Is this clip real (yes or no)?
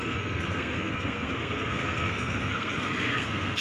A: no